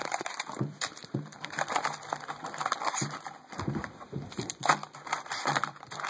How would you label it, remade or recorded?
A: remade